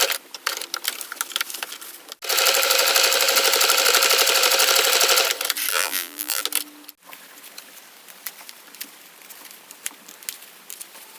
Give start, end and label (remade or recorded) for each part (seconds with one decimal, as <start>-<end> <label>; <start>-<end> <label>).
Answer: 0.0-5.7 recorded; 5.7-6.4 remade; 6.4-11.2 recorded